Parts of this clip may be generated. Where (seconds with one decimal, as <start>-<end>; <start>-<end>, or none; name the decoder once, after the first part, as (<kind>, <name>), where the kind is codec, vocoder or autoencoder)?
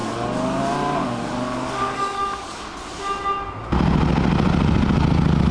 0.0-0.6 (codec, DAC); 1.0-2.6